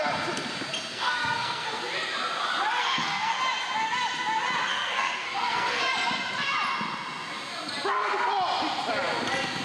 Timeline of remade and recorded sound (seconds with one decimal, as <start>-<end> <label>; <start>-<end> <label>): 0.0-0.9 recorded; 0.9-1.8 remade; 1.8-2.8 recorded; 2.8-3.4 remade; 3.4-4.7 recorded; 4.7-5.8 remade; 5.8-9.6 recorded